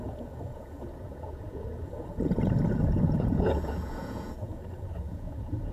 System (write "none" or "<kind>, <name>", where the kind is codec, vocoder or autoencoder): vocoder, Vocos